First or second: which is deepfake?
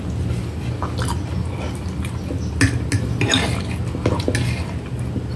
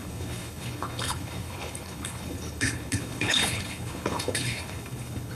second